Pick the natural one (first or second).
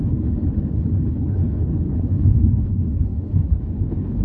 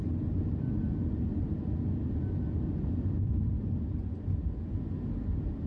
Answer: second